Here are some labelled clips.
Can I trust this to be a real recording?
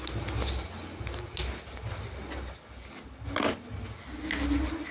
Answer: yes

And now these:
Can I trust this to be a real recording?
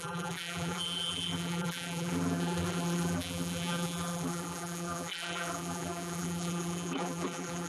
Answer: no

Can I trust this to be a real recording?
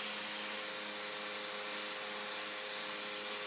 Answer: yes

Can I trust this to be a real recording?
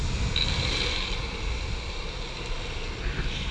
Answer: yes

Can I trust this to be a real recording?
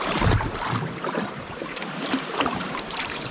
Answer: no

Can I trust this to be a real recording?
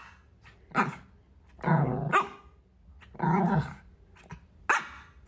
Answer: yes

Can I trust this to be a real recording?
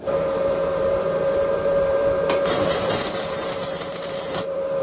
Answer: no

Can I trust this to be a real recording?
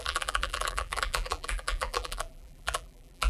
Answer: no